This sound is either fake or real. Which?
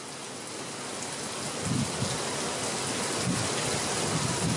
real